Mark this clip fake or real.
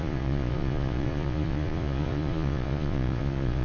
fake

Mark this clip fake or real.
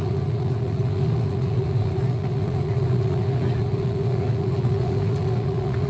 fake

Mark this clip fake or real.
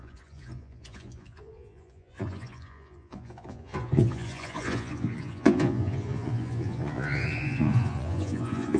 fake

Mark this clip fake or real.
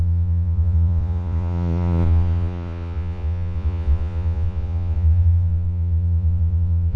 fake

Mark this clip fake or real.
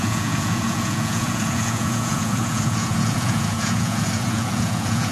fake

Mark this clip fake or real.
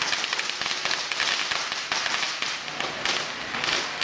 real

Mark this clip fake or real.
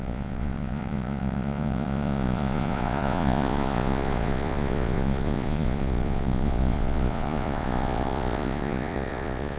fake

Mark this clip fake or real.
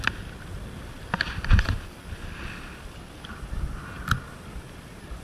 real